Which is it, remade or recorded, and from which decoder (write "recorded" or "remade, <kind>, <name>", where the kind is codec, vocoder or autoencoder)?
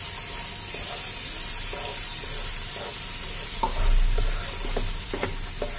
recorded